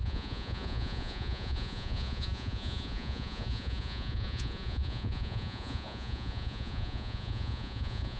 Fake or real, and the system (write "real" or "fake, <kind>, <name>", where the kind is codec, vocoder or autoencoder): fake, vocoder, Vocos